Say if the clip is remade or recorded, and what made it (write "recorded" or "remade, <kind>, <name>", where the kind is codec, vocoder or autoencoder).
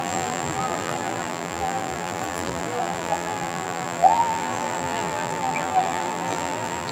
remade, vocoder, BigVGAN v2